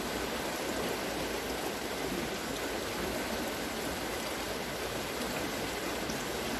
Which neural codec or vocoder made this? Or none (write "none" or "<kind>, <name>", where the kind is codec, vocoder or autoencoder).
none